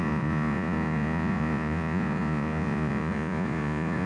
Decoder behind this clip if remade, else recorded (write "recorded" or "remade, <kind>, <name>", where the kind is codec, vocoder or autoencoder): remade, vocoder, Vocos